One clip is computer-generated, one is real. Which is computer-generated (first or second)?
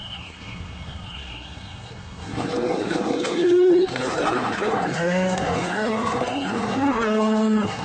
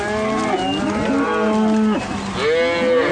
first